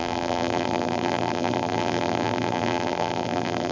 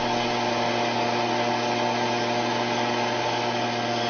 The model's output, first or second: first